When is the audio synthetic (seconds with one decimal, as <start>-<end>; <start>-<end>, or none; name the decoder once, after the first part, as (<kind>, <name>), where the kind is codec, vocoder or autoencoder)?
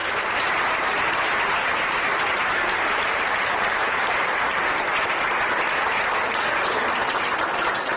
0.0-4.8 (vocoder, BigVGAN v2)